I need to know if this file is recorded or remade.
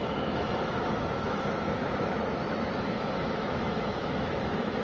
remade